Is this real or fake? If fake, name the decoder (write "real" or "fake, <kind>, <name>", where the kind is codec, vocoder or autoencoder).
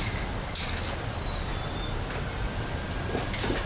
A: real